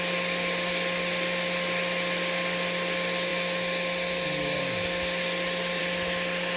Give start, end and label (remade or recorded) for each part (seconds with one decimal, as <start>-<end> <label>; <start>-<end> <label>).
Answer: 0.0-6.6 recorded